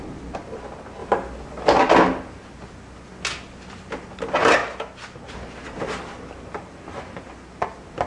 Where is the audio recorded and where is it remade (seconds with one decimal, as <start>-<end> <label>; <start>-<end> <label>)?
0.0-8.1 recorded